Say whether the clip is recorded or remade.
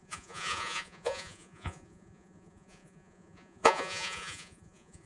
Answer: remade